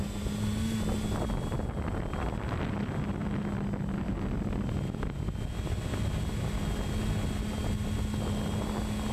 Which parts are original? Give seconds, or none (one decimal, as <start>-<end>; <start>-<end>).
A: 0.0-9.1